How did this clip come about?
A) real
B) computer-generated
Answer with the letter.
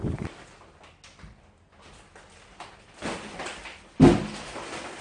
A